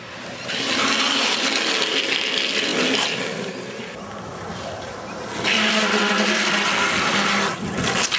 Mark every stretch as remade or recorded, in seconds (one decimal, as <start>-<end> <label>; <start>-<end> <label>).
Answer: 0.0-8.2 recorded